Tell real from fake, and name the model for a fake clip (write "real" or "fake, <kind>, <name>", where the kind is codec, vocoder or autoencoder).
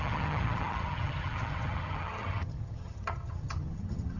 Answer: fake, vocoder, HiFi-GAN